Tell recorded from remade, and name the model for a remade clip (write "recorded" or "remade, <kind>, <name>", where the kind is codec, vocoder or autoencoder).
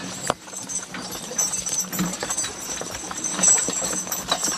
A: remade, vocoder, BigVGAN v2